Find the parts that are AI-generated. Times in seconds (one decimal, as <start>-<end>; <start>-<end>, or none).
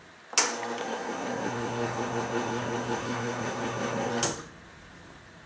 0.8-4.1